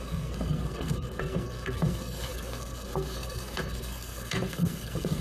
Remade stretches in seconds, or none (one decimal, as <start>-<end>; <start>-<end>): 0.0-5.2